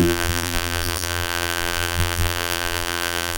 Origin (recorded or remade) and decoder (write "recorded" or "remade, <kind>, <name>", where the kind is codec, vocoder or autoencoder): remade, vocoder, BigVGAN v2